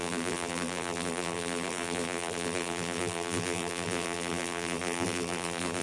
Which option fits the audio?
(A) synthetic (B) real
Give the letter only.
A